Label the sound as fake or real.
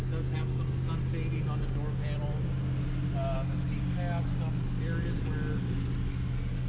real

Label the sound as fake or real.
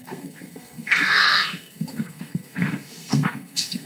fake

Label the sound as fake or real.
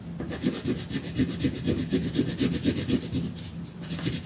real